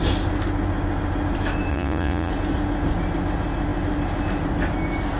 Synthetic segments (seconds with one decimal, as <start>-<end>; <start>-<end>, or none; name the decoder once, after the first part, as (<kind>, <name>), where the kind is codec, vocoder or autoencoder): 1.7-2.3 (vocoder, Vocos)